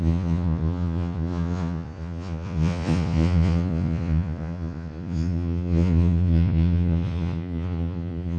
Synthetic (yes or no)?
yes